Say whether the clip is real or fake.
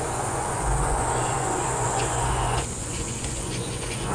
fake